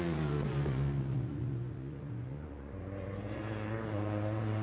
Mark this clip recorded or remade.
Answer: remade